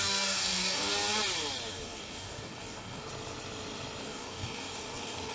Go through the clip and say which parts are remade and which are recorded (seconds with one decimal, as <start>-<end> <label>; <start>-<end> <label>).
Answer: 0.0-0.9 remade; 0.9-1.7 recorded; 1.7-3.1 remade; 3.1-4.0 recorded; 4.0-5.3 remade